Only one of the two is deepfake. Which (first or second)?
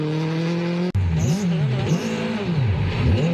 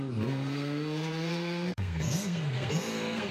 second